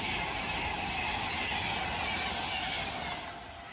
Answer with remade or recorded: recorded